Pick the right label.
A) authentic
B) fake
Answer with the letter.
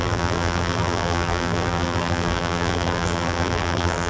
B